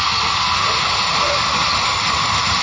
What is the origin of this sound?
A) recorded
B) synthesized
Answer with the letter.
A